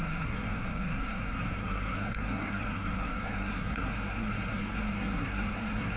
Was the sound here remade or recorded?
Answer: remade